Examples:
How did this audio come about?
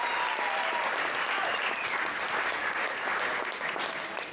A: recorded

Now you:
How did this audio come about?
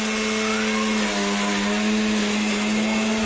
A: recorded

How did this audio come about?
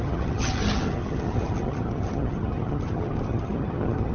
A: remade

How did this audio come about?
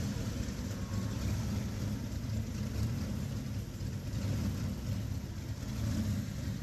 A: recorded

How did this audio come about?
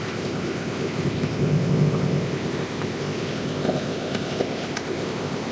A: remade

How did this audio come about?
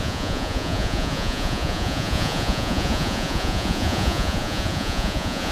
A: remade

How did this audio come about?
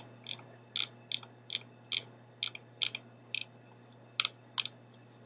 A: recorded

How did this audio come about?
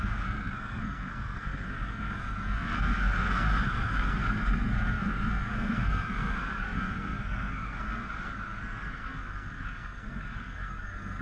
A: remade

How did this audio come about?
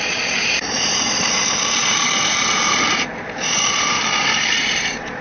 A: remade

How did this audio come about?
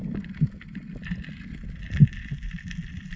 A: remade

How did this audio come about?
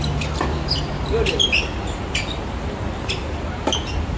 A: recorded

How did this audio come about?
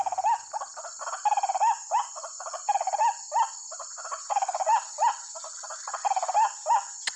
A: recorded